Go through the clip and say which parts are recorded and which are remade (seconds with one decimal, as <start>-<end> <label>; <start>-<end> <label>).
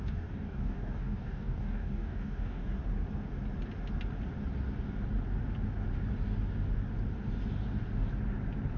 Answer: 0.0-2.8 remade; 2.8-8.8 recorded